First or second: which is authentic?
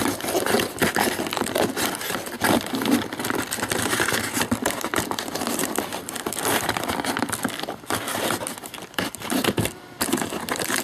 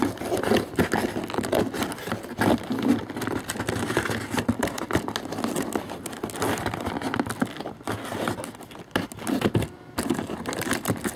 second